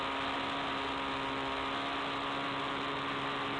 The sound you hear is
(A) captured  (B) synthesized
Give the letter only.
A